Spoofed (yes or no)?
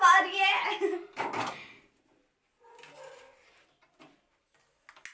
no